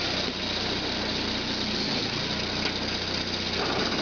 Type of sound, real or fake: real